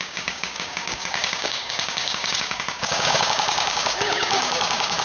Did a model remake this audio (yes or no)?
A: yes